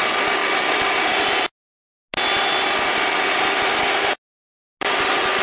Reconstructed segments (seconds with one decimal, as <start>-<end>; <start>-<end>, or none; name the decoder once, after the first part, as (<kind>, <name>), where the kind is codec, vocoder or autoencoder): none